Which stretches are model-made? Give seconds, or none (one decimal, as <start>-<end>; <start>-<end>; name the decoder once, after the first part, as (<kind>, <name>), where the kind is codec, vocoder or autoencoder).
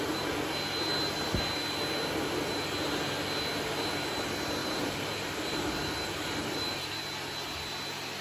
4.6-7.0 (vocoder, BigVGAN v2)